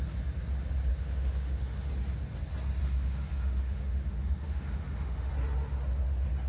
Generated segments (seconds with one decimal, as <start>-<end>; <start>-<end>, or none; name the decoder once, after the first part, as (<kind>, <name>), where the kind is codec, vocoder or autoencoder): 0.9-1.9 (autoencoder, DAC-VAE); 2.8-5.3